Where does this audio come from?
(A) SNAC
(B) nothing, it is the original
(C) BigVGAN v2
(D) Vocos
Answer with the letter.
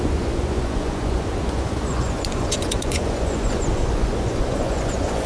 D